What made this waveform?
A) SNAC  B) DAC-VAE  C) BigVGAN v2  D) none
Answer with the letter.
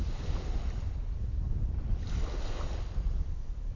D